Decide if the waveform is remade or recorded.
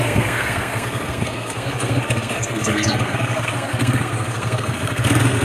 remade